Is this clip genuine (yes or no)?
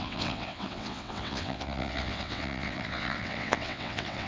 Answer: no